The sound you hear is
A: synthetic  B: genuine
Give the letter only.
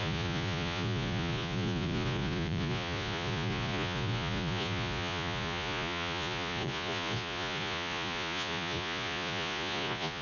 A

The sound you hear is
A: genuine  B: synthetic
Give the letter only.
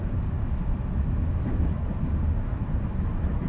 A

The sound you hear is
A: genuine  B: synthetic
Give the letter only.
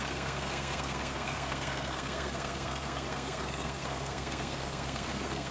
B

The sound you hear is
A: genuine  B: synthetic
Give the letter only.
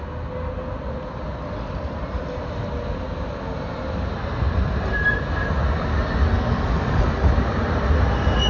A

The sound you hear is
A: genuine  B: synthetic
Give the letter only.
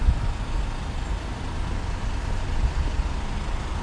A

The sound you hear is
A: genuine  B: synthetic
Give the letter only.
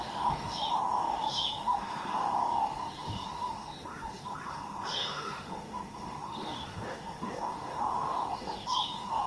B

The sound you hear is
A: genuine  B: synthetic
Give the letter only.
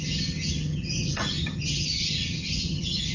B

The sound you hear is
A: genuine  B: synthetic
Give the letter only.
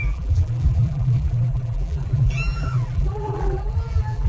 B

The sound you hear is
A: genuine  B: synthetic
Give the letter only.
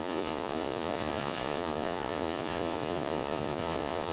B